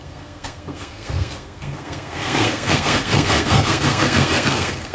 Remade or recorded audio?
remade